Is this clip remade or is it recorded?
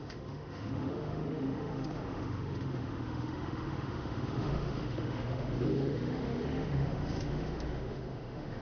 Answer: remade